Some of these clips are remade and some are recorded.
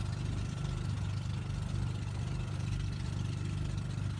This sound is recorded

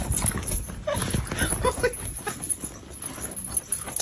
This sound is recorded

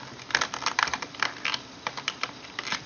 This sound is recorded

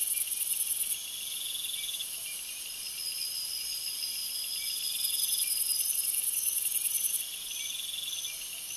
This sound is recorded